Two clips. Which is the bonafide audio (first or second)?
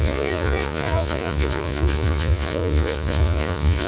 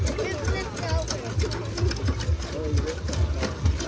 second